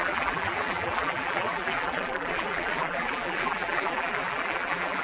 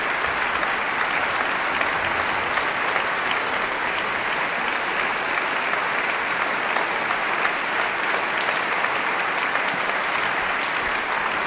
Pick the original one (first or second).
second